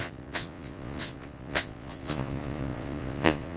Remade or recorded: remade